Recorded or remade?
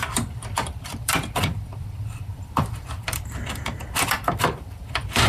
remade